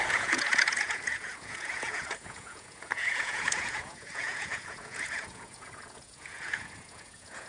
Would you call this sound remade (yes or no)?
yes